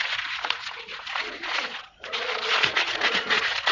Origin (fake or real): fake